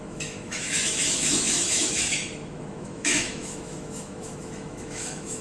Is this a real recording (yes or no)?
no